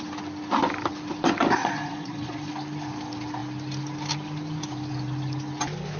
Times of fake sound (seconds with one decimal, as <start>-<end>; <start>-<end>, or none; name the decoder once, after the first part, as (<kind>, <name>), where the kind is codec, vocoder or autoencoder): 1.6-2.5 (vocoder, Vocos)